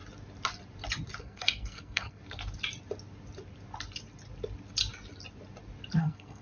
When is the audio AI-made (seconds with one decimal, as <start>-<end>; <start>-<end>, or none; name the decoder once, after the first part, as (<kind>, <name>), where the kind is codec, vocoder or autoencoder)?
1.2-2.2 (codec, SNAC); 6.0-6.4